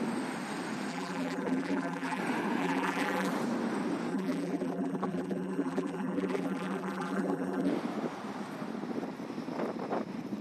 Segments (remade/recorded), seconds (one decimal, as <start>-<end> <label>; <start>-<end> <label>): 0.0-0.9 recorded; 0.9-2.2 remade; 2.2-2.6 recorded; 2.6-3.3 remade; 3.3-4.1 recorded; 4.1-7.7 remade; 7.7-10.4 recorded